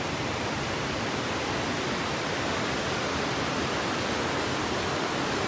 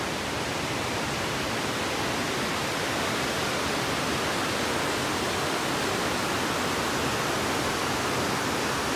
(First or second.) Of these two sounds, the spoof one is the first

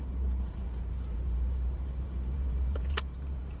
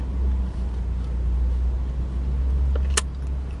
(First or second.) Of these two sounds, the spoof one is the first